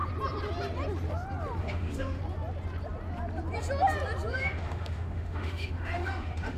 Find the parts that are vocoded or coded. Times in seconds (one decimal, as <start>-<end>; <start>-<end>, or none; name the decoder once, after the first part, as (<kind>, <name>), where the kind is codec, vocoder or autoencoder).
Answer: 1.6-2.2 (autoencoder, DAC-VAE); 4.3-6.6